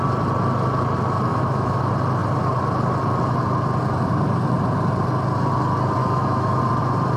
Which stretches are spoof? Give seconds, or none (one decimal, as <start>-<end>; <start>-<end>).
1.3-1.8; 6.0-6.6